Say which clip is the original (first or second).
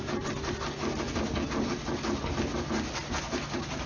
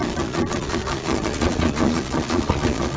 first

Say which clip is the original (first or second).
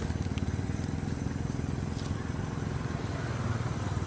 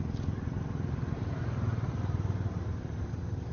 first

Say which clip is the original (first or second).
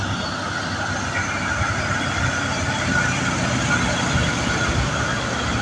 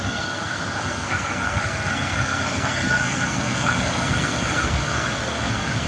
first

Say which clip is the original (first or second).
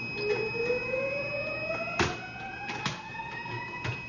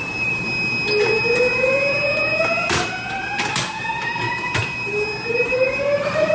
first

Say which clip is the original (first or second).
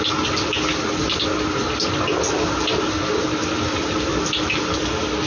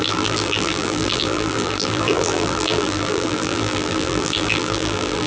first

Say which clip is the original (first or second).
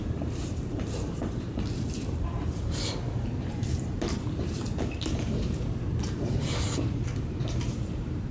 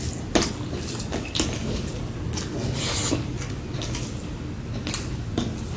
second